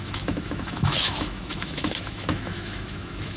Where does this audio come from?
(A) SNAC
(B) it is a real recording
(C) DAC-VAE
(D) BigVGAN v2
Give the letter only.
C